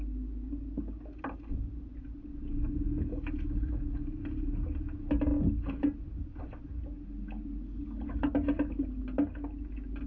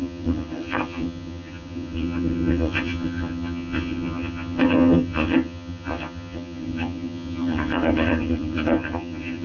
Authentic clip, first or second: first